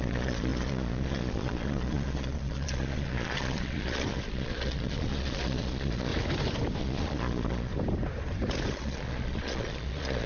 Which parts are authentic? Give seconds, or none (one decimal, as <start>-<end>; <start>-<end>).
6.1-6.8; 7.7-8.7

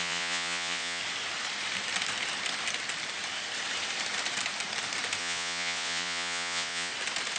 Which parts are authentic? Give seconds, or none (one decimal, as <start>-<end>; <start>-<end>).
1.0-5.2; 6.9-7.4

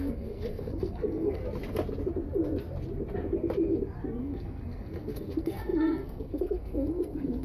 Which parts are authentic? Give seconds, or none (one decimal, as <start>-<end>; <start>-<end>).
1.4-4.2